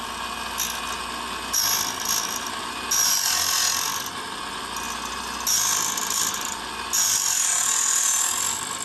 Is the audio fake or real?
real